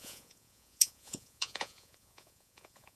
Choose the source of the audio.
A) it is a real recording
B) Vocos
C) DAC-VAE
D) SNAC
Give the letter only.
B